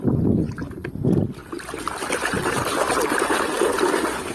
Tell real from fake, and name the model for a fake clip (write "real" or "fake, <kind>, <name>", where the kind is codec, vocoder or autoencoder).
real